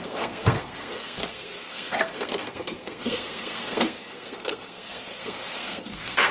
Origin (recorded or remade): remade